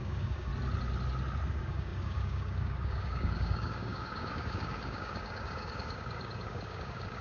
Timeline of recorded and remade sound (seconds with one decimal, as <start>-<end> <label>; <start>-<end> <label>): 0.0-0.5 remade; 0.5-1.5 recorded; 1.5-7.2 remade